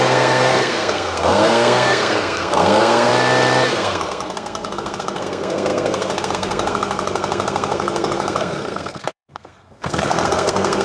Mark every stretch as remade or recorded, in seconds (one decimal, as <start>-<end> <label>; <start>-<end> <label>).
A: 0.0-3.1 remade; 3.1-3.7 recorded; 3.7-10.8 remade